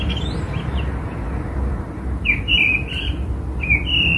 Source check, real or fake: real